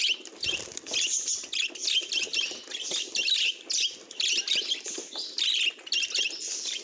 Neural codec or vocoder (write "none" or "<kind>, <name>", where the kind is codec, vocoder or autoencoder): none